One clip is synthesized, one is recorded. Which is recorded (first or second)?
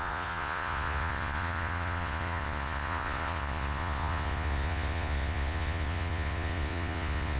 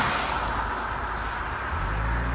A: second